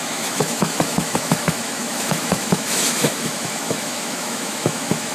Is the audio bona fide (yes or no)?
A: no